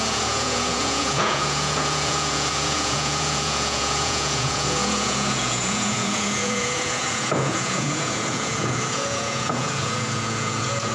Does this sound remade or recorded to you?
remade